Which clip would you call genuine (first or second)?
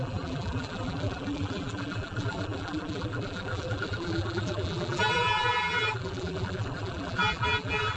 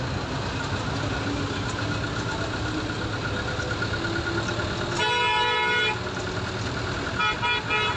second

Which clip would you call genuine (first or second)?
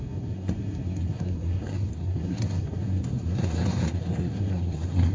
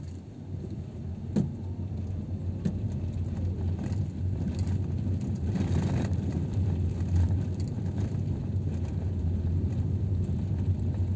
second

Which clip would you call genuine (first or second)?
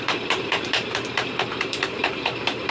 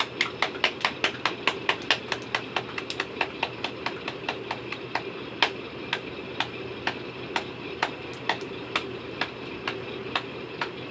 second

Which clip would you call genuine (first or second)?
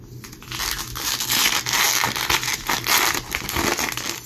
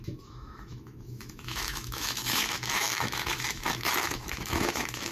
first